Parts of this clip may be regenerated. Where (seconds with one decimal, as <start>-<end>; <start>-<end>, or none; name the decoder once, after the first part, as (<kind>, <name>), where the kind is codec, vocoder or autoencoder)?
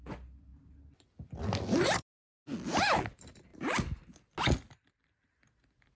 none